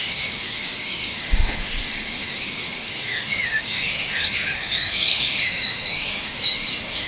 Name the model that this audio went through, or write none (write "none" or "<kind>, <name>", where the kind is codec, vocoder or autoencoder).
autoencoder, DAC-VAE